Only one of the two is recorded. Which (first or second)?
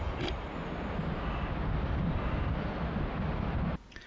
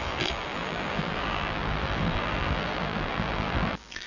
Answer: first